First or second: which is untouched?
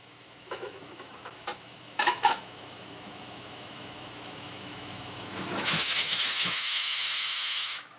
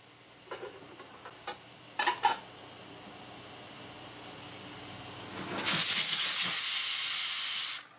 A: second